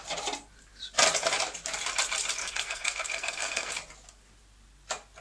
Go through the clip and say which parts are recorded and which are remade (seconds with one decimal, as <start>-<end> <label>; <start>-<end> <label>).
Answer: 0.0-2.4 recorded; 2.4-3.7 remade; 3.7-5.2 recorded